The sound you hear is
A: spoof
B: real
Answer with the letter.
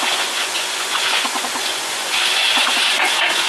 A